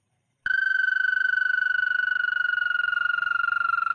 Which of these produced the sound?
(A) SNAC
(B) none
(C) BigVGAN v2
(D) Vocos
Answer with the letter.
C